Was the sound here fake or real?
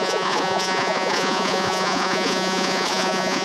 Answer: fake